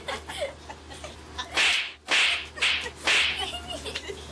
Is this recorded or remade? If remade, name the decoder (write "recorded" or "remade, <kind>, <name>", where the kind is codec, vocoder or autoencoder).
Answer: recorded